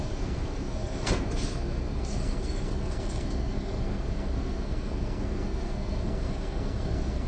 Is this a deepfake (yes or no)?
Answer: yes